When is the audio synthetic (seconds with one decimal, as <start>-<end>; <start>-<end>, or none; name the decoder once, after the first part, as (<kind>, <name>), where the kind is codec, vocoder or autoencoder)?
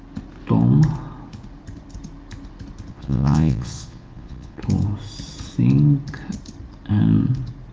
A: 2.9-4.6 (vocoder, Vocos)